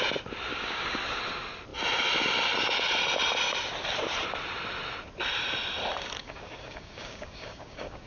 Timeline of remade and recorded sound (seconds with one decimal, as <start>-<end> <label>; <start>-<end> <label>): 0.0-0.5 recorded; 0.5-1.0 remade; 1.0-6.2 recorded; 6.2-8.1 remade